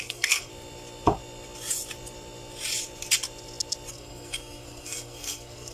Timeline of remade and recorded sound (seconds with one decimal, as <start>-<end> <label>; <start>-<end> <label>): 0.0-0.5 remade; 0.5-3.9 recorded; 3.9-5.7 remade